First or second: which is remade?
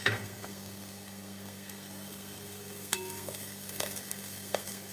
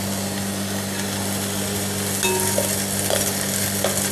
first